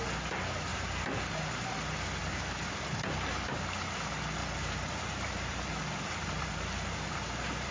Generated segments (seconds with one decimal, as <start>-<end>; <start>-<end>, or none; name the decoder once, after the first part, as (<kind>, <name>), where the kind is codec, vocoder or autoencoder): 0.7-1.2 (vocoder, BigVGAN v2); 4.4-7.7